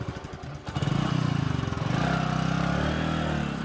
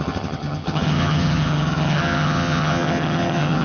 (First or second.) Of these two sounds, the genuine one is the first